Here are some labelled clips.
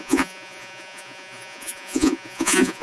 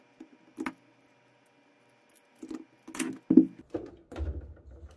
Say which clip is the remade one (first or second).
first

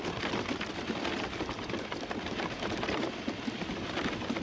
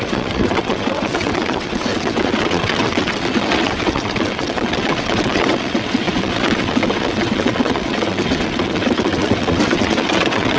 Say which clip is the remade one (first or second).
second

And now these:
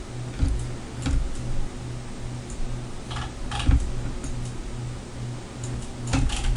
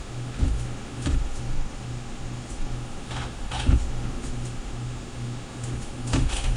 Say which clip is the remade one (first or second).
second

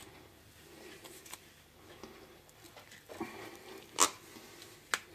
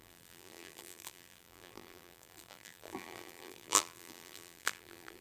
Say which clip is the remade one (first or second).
second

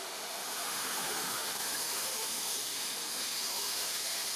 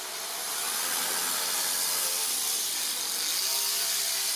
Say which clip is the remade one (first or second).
first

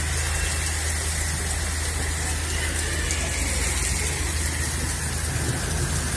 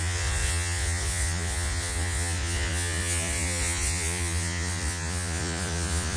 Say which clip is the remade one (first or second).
second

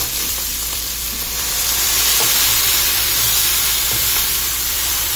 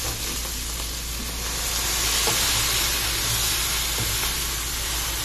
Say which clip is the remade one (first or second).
first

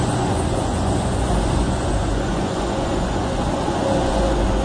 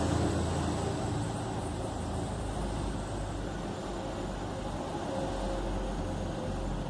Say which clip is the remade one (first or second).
first